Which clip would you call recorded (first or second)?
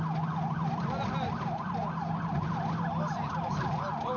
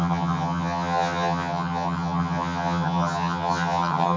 first